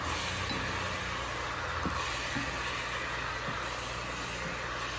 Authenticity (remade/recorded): recorded